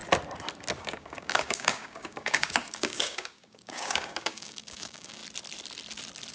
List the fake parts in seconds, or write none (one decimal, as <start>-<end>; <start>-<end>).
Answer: 0.8-5.2